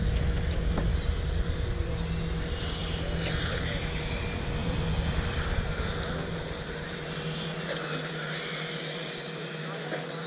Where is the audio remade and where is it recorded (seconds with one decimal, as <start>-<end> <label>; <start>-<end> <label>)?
0.0-10.3 recorded